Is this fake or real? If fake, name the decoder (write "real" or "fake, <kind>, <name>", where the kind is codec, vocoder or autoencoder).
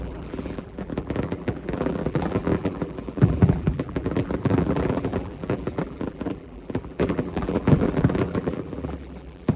fake, vocoder, BigVGAN v2